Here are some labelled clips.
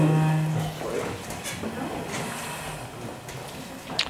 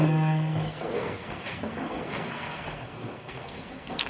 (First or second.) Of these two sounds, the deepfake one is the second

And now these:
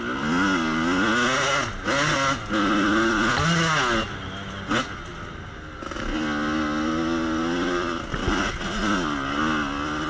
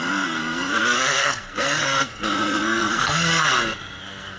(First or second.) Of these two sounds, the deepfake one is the second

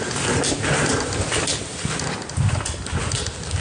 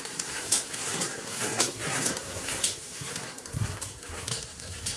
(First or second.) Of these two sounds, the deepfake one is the second